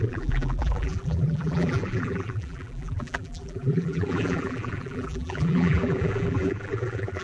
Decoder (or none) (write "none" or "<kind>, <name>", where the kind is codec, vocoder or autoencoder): vocoder, BigVGAN v2